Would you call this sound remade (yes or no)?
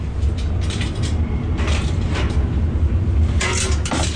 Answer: yes